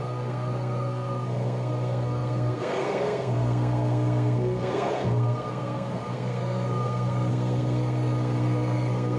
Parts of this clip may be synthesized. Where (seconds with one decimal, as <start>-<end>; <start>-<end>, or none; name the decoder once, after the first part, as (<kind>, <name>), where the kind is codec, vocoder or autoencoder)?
0.0-9.2 (codec, SNAC)